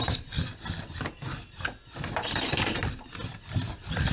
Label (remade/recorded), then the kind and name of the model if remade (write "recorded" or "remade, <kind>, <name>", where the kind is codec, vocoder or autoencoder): recorded